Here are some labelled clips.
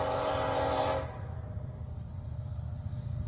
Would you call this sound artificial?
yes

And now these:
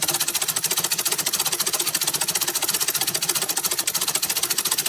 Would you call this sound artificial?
yes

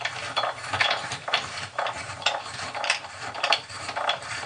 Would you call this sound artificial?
yes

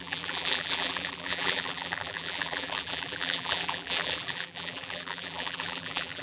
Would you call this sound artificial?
yes